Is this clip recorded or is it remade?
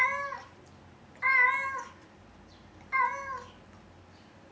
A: recorded